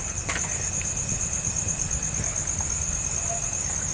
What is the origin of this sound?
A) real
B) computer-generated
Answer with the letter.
A